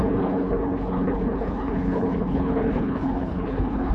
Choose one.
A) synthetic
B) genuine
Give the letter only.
A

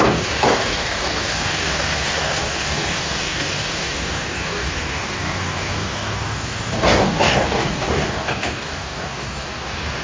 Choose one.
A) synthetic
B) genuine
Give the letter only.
A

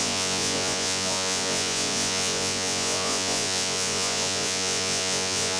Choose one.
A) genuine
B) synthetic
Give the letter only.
B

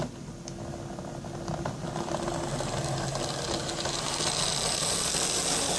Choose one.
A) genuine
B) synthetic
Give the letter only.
A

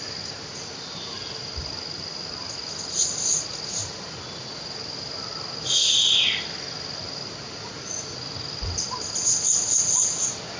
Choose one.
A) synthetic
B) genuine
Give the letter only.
B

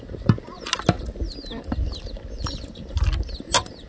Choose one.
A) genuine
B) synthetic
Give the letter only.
A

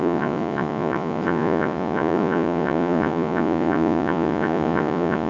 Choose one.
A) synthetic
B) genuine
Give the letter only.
A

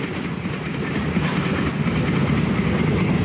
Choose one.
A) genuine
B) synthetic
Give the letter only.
A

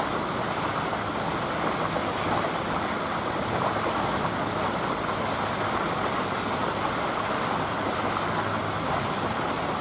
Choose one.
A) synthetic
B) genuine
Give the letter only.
B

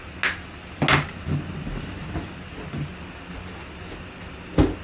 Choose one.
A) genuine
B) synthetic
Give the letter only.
A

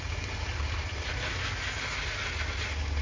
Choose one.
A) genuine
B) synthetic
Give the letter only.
A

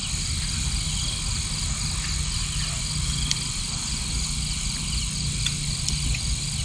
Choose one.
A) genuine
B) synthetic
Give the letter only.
A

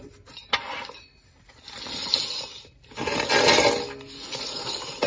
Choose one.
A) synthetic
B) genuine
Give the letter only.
B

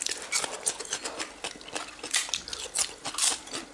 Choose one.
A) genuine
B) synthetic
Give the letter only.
A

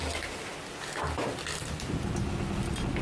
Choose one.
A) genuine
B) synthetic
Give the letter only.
A